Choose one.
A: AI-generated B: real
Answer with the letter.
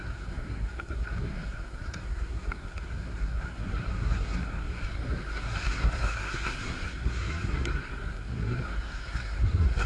A